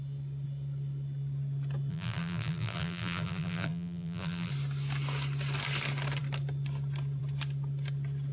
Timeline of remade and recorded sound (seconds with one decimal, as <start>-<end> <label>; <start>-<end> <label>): 0.0-1.9 recorded; 1.9-4.5 remade; 4.5-8.3 recorded